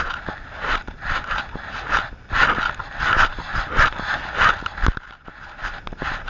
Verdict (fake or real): real